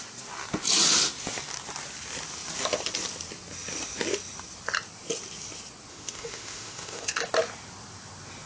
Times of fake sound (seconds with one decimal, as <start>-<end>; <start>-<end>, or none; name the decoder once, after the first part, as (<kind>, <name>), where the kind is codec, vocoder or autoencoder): 5.9-7.3 (autoencoder, DAC-VAE)